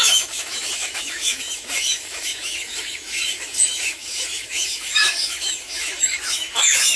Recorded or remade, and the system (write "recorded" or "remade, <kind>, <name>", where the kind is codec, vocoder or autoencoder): remade, autoencoder, DAC-VAE